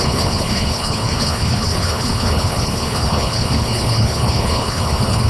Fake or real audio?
fake